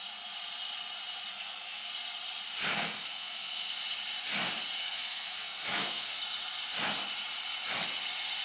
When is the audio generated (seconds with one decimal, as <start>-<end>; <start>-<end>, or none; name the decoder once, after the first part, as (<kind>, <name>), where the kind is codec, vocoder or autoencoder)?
1.3-1.9 (codec, SNAC); 2.7-3.7; 4.8-6.2